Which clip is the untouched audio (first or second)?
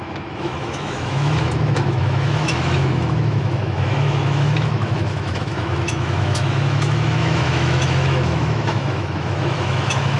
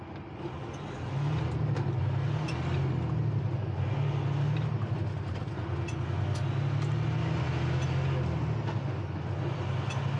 second